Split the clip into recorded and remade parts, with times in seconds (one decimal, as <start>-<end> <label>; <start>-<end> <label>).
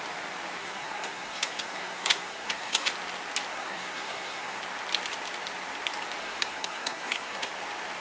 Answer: 0.0-0.6 recorded; 0.6-2.9 remade; 2.9-3.5 recorded; 3.5-4.6 remade; 4.6-6.2 recorded; 6.2-7.5 remade; 7.5-8.0 recorded